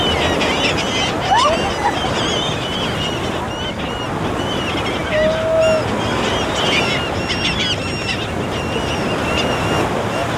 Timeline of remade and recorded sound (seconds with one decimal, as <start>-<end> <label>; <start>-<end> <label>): 0.0-10.4 recorded